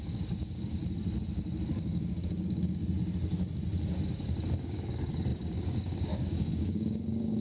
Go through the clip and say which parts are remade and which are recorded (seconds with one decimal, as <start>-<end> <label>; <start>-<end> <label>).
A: 0.0-0.8 remade; 0.8-1.7 recorded; 1.7-2.8 remade; 2.8-4.5 recorded; 4.5-7.4 remade